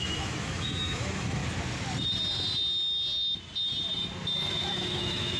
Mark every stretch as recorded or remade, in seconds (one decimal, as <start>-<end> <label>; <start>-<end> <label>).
0.0-1.4 remade; 1.4-4.5 recorded; 4.5-5.4 remade